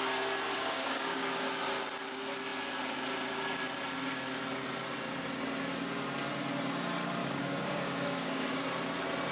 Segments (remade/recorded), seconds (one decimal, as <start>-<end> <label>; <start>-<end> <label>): 0.0-0.5 recorded; 0.5-1.5 remade; 1.5-7.2 recorded; 7.2-8.6 remade; 8.6-9.3 recorded